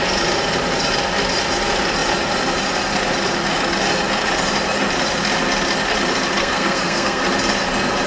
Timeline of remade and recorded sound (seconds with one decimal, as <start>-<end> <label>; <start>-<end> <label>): 0.0-6.4 recorded; 6.4-7.2 remade; 7.2-8.1 recorded